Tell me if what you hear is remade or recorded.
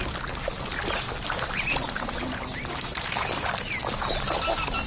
recorded